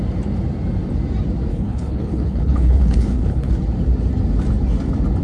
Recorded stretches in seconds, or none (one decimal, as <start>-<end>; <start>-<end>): 0.0-1.5; 3.5-5.2

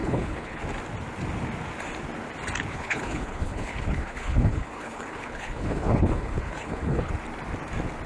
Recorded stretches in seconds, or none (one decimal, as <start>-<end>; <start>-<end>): 0.6-2.7; 7.1-8.1

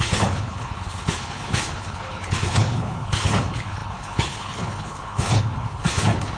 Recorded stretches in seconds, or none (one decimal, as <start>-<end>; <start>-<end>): none

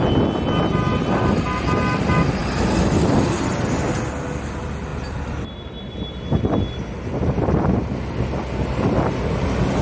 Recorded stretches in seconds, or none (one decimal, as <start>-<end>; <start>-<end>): 0.0-9.8